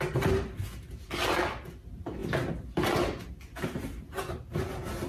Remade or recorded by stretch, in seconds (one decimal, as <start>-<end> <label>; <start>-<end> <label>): 0.0-5.1 recorded